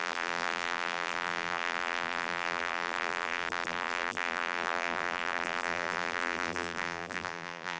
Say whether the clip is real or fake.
fake